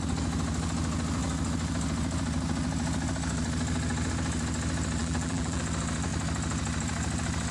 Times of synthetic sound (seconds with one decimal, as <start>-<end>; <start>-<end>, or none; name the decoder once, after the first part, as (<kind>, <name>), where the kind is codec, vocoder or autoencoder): 5.0-5.6 (vocoder, BigVGAN v2)